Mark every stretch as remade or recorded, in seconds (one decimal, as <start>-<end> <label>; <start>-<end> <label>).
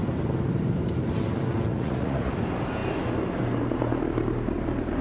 0.0-1.7 recorded; 1.7-2.3 remade; 2.3-5.0 recorded